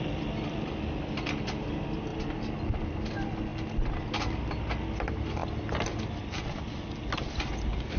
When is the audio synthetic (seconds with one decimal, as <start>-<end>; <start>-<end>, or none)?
none